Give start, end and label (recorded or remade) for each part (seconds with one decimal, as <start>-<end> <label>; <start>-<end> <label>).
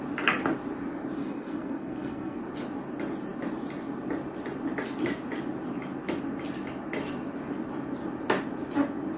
0.0-1.2 recorded; 1.2-2.4 remade; 2.4-9.2 recorded